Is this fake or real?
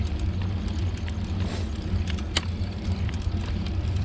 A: real